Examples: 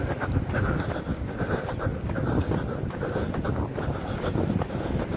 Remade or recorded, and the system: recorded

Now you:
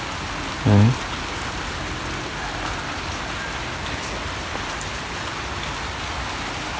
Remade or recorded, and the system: recorded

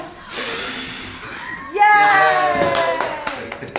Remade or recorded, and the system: recorded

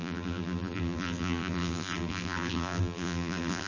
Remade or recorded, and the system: remade, vocoder, BigVGAN v2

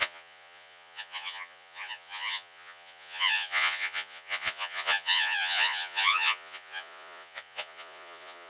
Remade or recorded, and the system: remade, vocoder, Vocos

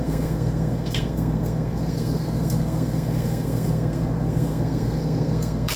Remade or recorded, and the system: remade, codec, SNAC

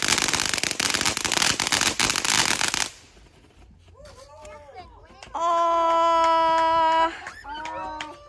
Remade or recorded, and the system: recorded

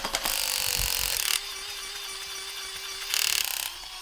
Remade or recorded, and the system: recorded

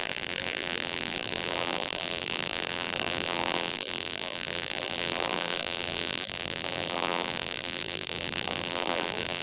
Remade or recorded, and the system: remade, vocoder, BigVGAN v2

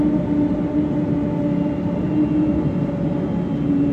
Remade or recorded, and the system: recorded